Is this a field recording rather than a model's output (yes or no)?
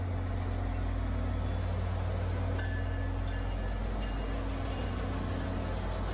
yes